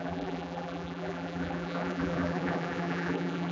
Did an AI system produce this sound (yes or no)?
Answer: yes